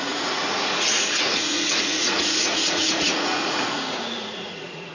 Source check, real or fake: fake